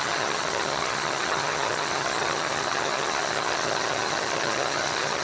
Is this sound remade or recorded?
remade